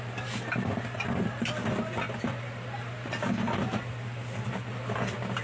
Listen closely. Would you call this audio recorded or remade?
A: recorded